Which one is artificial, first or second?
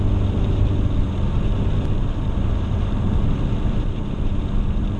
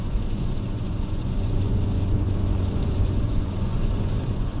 second